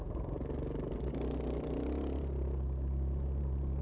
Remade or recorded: recorded